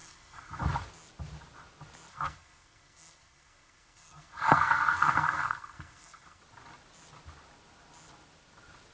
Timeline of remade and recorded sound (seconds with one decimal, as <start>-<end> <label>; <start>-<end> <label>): 0.0-0.6 remade; 0.6-2.1 recorded; 2.1-6.4 remade; 6.4-8.9 recorded